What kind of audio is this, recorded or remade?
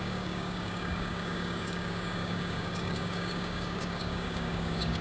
remade